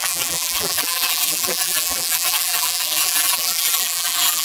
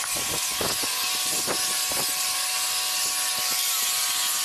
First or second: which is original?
second